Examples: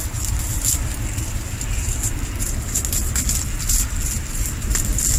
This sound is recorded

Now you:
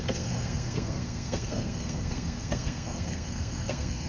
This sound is remade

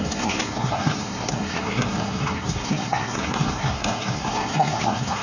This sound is remade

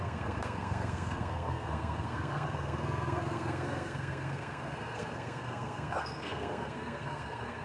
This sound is remade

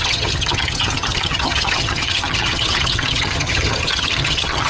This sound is remade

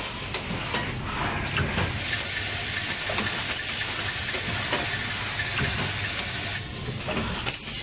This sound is recorded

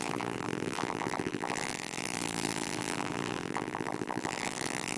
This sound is remade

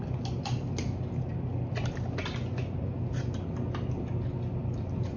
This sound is recorded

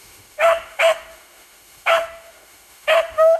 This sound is remade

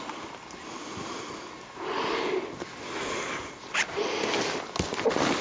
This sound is recorded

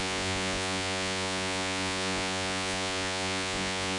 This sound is remade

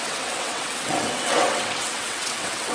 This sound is remade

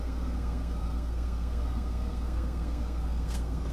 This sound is remade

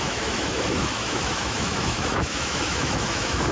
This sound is remade